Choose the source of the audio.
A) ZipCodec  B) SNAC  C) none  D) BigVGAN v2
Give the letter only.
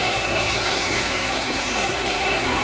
B